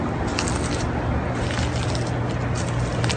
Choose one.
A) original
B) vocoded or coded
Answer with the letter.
A